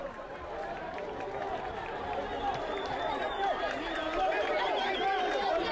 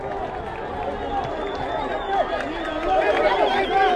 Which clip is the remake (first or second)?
first